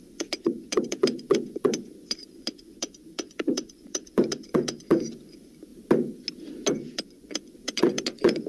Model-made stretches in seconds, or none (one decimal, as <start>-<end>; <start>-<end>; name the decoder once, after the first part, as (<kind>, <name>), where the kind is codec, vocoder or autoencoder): 0.0-5.7 (vocoder, Vocos); 6.7-8.5